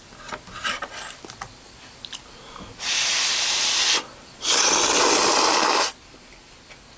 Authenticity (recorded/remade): recorded